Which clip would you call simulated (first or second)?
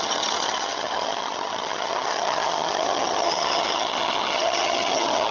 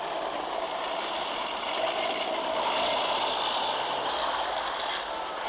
first